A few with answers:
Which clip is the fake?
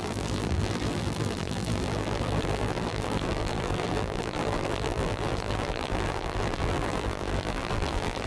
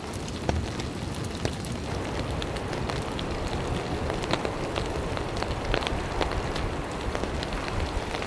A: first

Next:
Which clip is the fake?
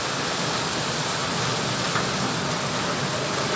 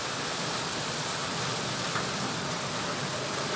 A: second